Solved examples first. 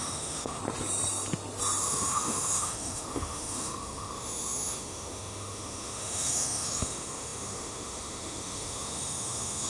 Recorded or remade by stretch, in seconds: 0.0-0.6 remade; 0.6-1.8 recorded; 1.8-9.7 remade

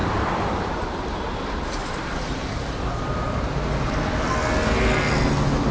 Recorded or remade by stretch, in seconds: 0.0-0.6 remade; 0.6-1.8 recorded; 1.8-4.3 remade; 4.3-5.7 recorded